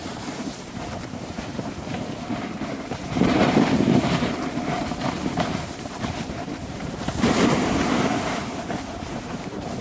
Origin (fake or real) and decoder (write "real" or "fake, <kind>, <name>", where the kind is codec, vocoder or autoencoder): fake, vocoder, BigVGAN v2